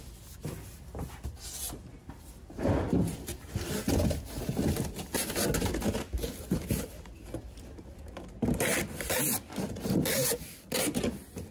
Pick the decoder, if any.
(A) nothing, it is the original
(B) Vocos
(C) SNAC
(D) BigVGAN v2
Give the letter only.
A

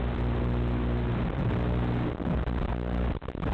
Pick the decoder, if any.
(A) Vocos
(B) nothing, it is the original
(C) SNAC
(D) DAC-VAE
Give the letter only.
B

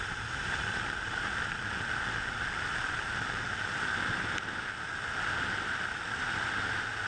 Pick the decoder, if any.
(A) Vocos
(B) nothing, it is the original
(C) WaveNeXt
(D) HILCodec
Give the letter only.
B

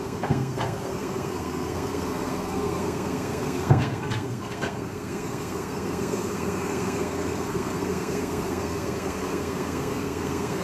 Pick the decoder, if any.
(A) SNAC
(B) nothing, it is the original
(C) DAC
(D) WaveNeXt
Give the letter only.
A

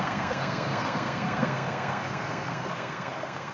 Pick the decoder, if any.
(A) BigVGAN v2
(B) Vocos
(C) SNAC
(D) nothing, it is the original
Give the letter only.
C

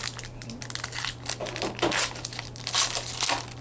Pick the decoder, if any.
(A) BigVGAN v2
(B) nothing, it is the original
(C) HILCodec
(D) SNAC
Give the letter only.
B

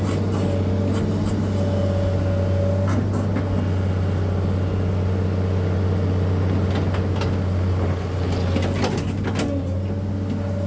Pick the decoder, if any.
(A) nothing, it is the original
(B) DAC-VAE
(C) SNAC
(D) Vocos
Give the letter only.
A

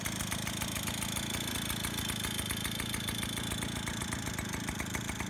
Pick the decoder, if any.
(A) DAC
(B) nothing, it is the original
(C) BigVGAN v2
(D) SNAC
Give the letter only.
B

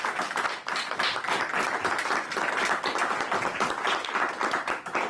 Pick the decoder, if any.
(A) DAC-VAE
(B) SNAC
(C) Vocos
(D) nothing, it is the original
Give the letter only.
D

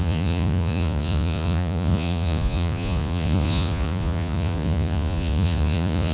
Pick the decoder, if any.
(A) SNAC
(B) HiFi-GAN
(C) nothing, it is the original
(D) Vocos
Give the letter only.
D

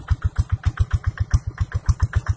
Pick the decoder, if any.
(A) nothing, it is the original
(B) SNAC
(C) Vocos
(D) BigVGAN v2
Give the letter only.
A